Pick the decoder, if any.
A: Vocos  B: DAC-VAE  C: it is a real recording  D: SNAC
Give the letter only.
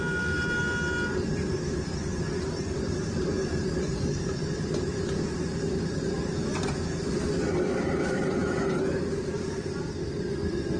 C